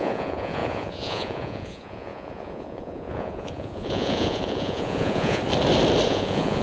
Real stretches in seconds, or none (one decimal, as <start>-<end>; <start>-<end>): 5.4-6.1